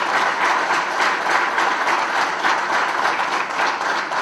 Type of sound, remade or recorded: recorded